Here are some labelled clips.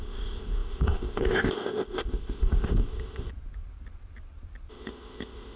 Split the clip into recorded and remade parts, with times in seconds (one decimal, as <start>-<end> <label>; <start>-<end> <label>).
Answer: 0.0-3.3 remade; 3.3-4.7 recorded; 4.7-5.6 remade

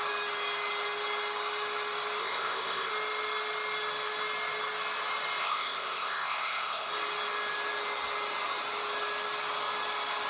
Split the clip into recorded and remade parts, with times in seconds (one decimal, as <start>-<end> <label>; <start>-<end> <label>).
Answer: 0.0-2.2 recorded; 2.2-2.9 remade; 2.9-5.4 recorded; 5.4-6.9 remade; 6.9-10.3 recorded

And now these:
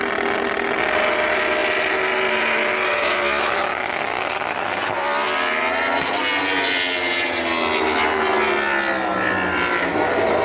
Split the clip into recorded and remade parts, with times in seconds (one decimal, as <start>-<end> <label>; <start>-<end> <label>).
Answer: 0.0-10.4 recorded

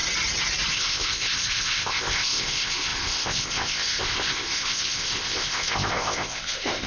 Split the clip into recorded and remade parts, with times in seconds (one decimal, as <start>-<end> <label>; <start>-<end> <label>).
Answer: 0.0-0.7 recorded; 0.7-6.9 remade